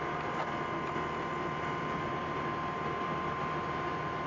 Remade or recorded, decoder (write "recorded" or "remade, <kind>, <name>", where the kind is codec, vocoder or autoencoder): recorded